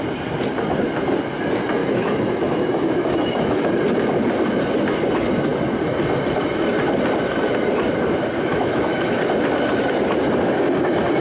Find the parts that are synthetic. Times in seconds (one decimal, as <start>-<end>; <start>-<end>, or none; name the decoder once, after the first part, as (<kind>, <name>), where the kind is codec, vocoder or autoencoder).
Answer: 1.8-3.7 (autoencoder, DAC-VAE); 8.5-9.1